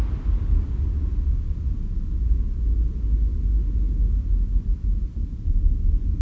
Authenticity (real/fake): real